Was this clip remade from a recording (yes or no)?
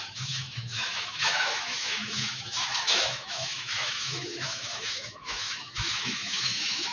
yes